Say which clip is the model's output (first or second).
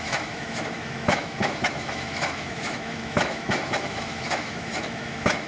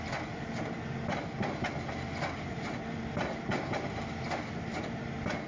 first